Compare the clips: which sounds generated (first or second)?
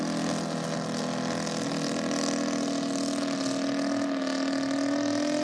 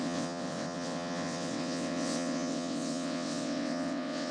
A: second